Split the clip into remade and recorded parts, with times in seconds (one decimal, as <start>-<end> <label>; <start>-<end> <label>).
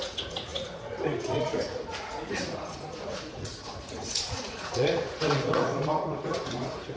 0.0-7.0 remade